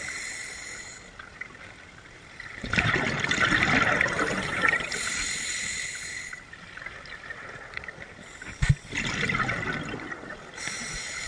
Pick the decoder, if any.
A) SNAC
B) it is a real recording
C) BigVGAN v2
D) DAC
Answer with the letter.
B